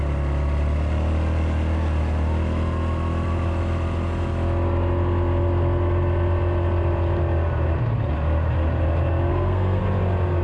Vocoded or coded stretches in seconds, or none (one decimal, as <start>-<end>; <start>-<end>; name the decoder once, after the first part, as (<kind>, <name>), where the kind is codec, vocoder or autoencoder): 9.3-9.8 (codec, SNAC)